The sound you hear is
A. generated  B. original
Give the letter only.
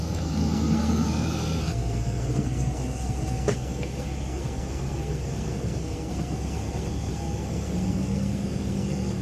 A